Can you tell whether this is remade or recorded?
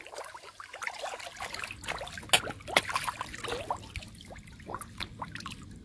recorded